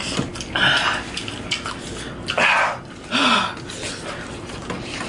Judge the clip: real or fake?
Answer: real